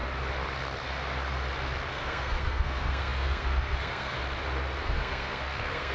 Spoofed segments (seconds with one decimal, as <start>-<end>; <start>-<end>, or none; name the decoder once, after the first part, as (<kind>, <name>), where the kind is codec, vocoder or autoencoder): 1.9-4.2 (codec, SNAC); 4.8-5.9